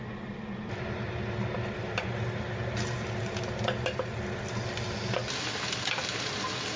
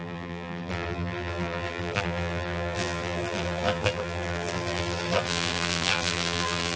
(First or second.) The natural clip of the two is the first